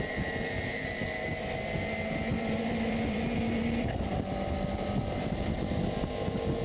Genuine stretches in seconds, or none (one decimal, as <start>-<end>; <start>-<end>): 0.0-2.3; 5.7-6.6

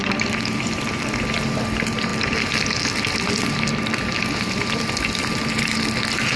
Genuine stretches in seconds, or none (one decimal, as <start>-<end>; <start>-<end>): 0.0-6.4

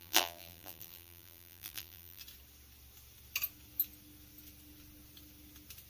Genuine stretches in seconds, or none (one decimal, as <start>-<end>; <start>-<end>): 2.2-5.9

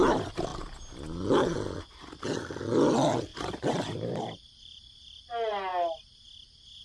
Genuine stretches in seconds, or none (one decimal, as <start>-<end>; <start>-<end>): 0.0-3.3; 5.2-6.8

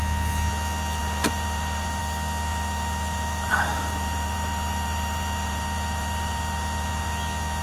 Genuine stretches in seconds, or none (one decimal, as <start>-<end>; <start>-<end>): 0.0-1.0; 2.0-2.5; 7.1-7.6

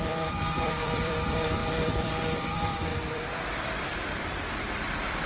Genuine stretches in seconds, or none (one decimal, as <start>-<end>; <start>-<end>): none

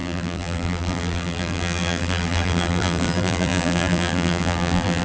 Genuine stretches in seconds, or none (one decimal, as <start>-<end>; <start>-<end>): none

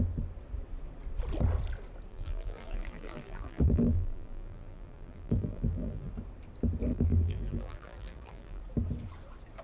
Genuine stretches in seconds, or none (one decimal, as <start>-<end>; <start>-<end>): 0.0-2.1; 6.1-6.9; 8.6-9.6